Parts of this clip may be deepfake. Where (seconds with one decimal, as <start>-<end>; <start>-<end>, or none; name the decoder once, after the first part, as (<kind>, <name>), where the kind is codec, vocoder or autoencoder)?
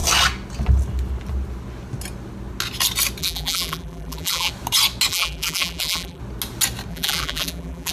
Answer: 3.2-4.5 (vocoder, BigVGAN v2); 5.1-6.2; 6.9-7.9